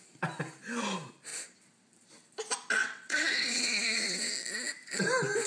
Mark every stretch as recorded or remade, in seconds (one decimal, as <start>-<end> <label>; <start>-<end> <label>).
0.0-2.8 recorded; 2.8-4.3 remade; 4.3-5.5 recorded